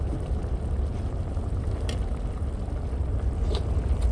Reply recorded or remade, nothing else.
recorded